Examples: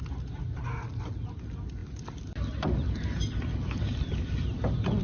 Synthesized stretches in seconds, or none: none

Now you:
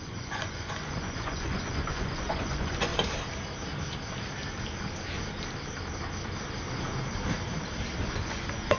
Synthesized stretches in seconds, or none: 0.0-2.9 (vocoder, Vocos); 8.1-8.8

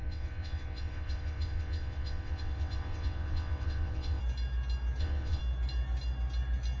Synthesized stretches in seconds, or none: 0.0-4.2 (vocoder, WaveNeXt); 5.0-5.4

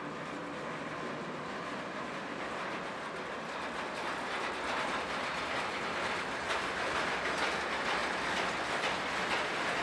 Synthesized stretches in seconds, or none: none

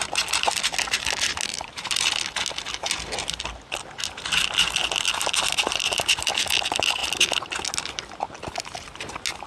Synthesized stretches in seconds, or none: none